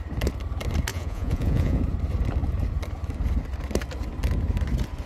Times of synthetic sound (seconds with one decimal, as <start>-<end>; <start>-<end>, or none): 0.9-1.8

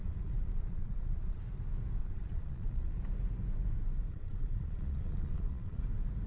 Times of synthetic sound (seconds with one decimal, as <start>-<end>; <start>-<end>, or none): 0.0-1.4; 2.0-3.0; 4.1-5.8

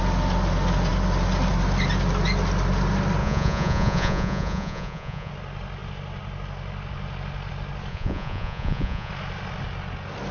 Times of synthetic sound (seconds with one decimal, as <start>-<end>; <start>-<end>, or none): 3.2-5.3; 7.9-9.1

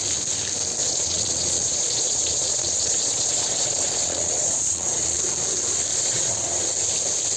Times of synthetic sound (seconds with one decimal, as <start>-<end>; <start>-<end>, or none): 0.8-5.2; 5.9-6.7

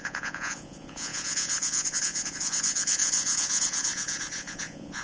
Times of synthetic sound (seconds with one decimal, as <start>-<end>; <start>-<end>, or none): 0.0-5.0